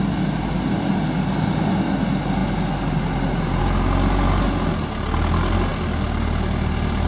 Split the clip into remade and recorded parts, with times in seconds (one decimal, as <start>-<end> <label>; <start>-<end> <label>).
0.0-7.1 recorded